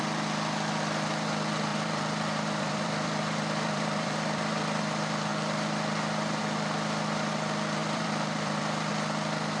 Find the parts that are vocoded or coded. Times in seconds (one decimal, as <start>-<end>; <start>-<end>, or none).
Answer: 1.7-4.8; 7.8-8.9